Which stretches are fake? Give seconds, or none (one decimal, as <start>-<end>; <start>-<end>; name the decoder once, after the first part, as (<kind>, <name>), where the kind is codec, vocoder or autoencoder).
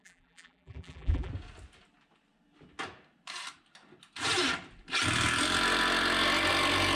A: 0.0-1.3 (vocoder, BigVGAN v2)